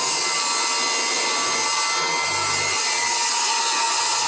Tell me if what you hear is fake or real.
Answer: real